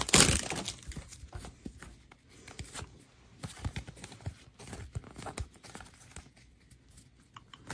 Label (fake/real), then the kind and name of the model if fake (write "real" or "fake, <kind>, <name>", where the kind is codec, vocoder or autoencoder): real